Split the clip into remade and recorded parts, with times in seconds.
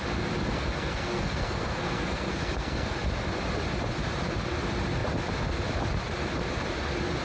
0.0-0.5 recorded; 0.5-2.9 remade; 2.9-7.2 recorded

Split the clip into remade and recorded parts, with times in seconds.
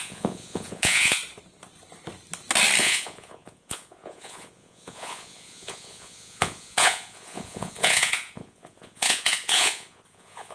0.0-1.2 remade; 1.2-2.8 recorded; 2.8-10.5 remade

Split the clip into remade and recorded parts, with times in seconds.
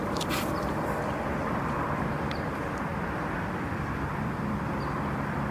0.0-2.9 remade; 2.9-3.4 recorded; 3.4-5.5 remade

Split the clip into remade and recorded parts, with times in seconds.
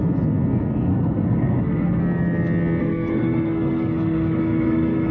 0.0-0.9 recorded; 0.9-2.0 remade; 2.0-2.8 recorded; 2.8-5.1 remade